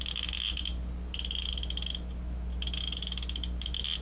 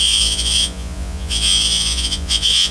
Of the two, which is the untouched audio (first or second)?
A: first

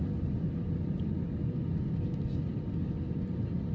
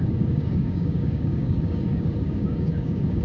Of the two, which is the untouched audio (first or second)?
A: first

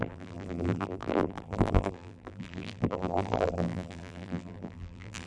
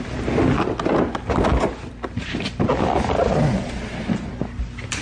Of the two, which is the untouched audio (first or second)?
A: second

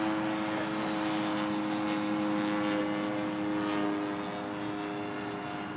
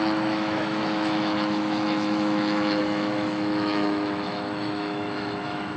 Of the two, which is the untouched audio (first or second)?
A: first